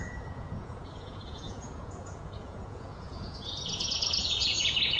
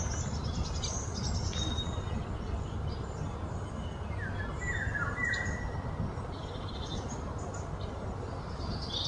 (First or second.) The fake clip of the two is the first